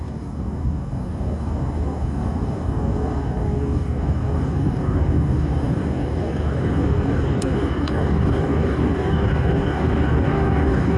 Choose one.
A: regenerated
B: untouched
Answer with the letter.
A